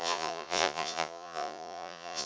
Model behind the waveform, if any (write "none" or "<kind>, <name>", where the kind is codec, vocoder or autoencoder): vocoder, Vocos